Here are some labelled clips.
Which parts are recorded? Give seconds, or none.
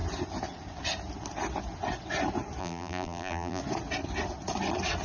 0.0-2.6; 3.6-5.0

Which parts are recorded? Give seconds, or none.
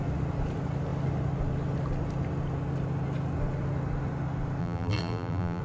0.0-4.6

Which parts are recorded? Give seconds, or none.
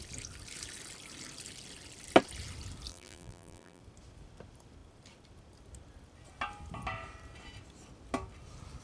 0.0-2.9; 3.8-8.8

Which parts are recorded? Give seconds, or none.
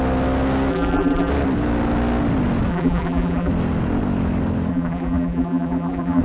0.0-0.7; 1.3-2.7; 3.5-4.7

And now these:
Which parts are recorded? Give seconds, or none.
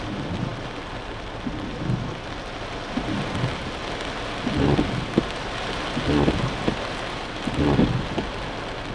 0.0-8.9